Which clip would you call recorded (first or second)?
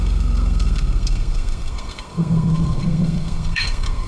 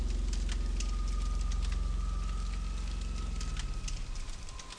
second